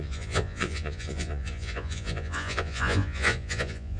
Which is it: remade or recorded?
remade